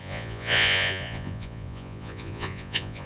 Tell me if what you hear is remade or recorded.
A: remade